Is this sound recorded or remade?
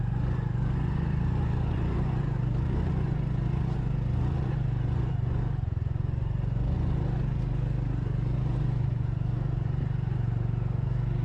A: remade